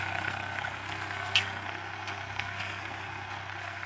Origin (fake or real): fake